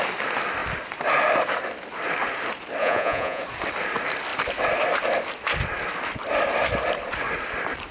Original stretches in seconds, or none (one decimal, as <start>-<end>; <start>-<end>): 0.0-2.8; 3.4-7.9